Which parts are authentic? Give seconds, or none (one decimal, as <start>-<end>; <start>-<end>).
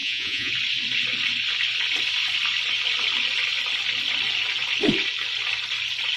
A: 0.5-6.2